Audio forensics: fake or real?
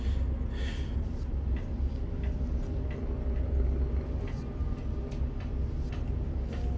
real